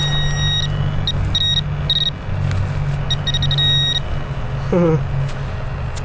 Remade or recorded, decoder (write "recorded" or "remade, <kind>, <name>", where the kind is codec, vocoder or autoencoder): recorded